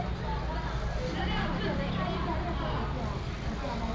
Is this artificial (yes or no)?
no